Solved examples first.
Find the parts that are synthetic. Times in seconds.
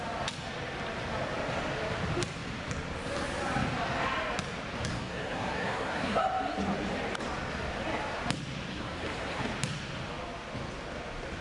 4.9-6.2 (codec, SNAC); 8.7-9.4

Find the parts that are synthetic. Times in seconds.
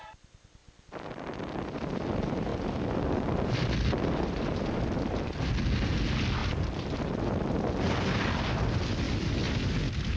0.6-1.2 (vocoder, BigVGAN v2); 2.5-5.5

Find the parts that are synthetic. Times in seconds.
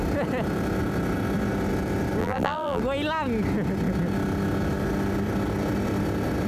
2.2-2.8 (vocoder, BigVGAN v2)